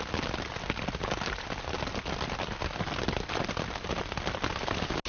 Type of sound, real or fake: real